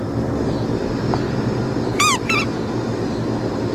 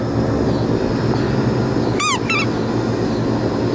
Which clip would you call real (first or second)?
second